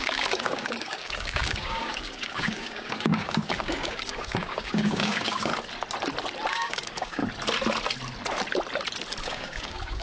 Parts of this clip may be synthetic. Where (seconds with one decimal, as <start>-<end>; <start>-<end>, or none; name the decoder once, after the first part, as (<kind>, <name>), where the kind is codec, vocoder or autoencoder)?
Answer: 0.0-5.5 (codec, DAC); 6.5-7.2; 9.2-10.0